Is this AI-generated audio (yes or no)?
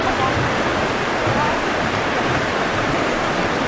no